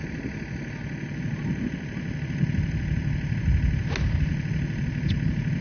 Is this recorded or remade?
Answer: recorded